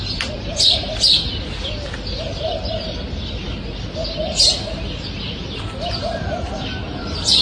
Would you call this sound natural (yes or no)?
yes